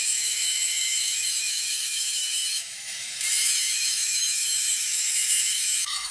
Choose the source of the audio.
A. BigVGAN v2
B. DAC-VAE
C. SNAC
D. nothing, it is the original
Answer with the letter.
B